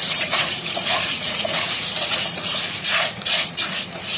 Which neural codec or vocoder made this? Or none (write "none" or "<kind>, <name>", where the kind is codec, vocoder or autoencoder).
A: vocoder, Vocos